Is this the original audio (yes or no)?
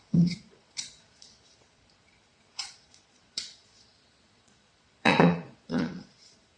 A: no